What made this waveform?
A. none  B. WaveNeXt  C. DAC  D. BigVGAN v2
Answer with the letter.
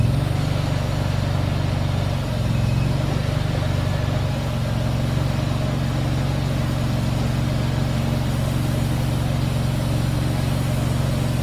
A